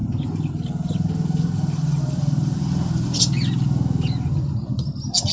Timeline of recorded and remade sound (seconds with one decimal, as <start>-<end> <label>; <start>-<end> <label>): 0.0-3.2 remade; 3.2-5.3 recorded